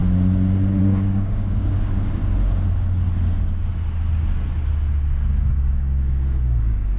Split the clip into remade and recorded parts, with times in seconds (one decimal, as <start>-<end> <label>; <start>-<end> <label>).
0.0-0.8 recorded; 0.8-2.2 remade; 2.2-5.4 recorded; 5.4-7.0 remade